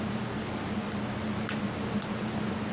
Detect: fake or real real